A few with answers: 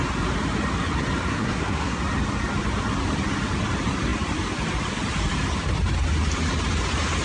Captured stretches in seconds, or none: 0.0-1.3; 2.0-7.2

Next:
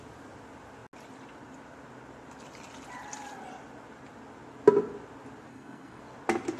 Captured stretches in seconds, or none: 0.0-5.5; 6.0-6.6

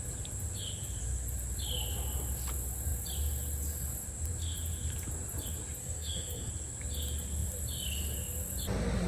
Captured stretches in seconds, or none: 0.0-5.8; 6.5-9.1

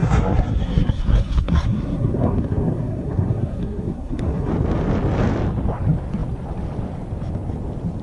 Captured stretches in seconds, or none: 4.5-8.0

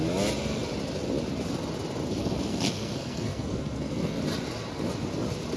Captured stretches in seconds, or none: 0.0-2.2; 4.2-5.6

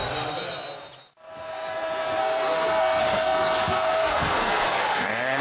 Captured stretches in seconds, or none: 0.0-2.2

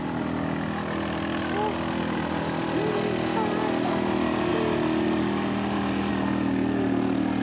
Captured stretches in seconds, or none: 0.0-7.4